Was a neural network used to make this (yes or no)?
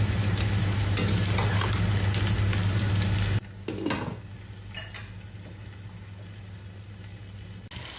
no